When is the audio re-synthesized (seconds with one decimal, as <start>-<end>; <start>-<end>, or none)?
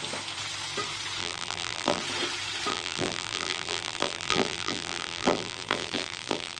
1.2-2.0; 2.7-6.6